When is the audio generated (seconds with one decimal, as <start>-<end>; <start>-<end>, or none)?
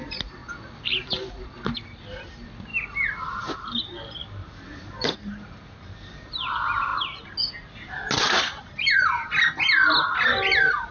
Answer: 0.4-1.6; 2.7-3.8; 4.2-6.3